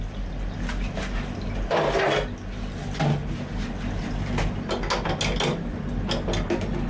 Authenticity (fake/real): real